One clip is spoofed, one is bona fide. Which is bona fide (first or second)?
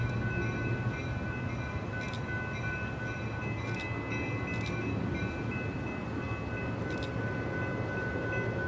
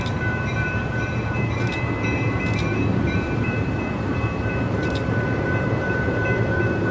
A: first